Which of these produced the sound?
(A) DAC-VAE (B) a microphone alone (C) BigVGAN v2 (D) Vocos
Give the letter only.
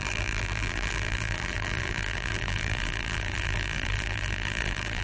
C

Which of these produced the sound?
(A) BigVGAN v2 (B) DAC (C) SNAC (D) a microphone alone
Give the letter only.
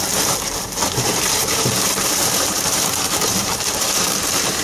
A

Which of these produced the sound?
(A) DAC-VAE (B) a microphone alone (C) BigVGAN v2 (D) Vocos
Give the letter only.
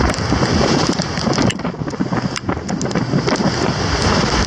B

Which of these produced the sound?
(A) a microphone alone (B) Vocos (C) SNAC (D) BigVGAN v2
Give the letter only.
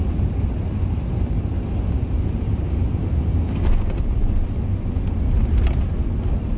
A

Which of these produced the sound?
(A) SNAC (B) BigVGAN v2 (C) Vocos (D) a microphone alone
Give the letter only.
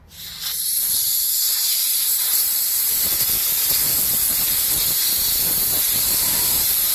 B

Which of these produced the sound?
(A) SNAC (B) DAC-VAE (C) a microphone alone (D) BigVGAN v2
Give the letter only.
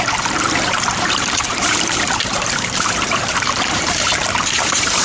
D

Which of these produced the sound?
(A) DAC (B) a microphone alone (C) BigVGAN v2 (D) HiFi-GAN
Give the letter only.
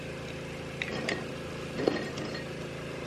C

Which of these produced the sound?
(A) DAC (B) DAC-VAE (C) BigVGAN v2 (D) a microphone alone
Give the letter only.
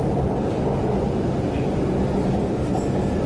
D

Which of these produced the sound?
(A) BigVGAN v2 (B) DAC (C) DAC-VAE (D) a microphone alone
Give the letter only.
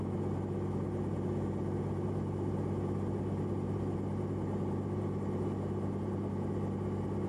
D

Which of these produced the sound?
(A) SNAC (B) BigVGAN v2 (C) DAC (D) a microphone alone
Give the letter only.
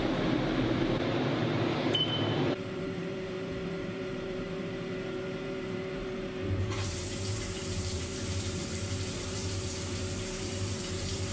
B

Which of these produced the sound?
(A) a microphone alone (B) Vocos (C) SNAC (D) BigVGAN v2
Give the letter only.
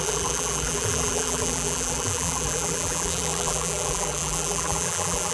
D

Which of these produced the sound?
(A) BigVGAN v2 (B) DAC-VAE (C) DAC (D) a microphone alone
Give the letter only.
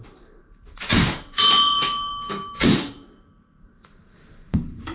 A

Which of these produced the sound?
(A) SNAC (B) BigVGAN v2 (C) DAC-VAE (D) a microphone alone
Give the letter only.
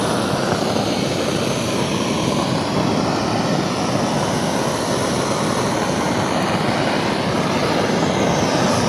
D